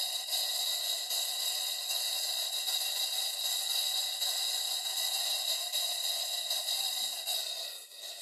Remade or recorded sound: recorded